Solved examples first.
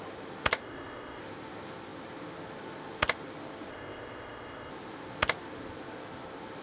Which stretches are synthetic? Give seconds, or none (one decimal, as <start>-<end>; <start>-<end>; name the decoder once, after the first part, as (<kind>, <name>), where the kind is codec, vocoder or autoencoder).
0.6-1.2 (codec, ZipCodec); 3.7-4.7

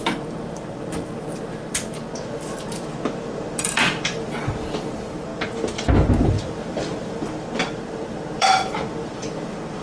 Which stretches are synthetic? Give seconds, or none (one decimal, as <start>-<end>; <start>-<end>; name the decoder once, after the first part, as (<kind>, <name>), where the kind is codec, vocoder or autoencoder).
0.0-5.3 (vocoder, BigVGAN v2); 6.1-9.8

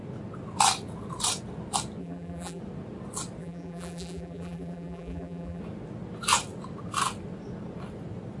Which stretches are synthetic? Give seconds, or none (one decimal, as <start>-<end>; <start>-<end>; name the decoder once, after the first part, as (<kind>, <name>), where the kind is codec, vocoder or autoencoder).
2.0-2.6 (vocoder, BigVGAN v2); 3.4-5.6